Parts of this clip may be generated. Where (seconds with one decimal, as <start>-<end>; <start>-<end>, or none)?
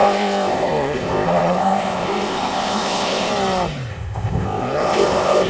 0.0-3.3; 3.9-5.5